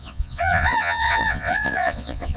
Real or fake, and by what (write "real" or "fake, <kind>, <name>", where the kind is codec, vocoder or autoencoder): fake, vocoder, Vocos